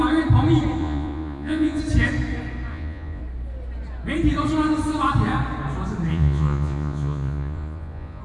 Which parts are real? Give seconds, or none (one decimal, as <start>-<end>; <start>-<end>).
0.0-0.8; 1.8-2.7; 3.2-6.1

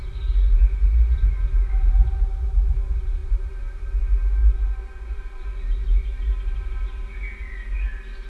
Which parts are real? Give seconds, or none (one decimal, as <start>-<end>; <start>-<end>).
0.0-4.4; 5.6-8.3